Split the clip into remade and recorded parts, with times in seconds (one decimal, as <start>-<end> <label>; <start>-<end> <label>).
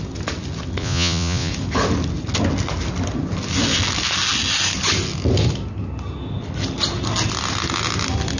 0.0-0.8 recorded; 0.8-1.5 remade; 1.5-8.4 recorded